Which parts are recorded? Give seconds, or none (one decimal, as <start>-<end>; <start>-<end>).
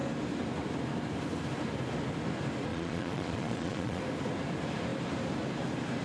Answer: 0.0-2.7; 4.0-6.0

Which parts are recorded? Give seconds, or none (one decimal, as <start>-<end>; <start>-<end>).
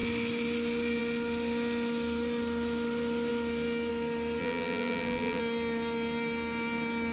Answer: 0.0-4.4; 5.4-7.1